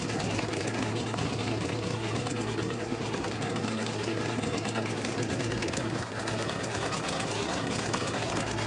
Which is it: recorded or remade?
remade